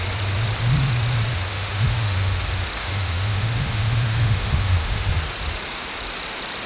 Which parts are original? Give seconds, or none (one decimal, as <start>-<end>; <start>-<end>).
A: 0.0-1.5; 2.4-2.8; 5.1-6.7